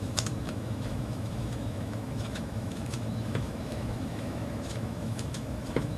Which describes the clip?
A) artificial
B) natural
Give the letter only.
A